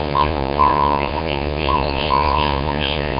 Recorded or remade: remade